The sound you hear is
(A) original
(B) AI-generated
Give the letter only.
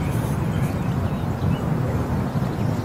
A